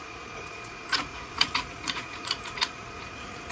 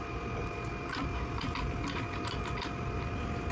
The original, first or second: second